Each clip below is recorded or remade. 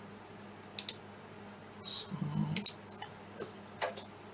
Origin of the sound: recorded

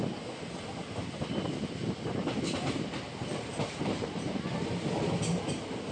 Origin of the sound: recorded